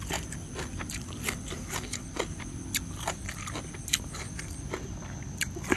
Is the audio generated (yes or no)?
no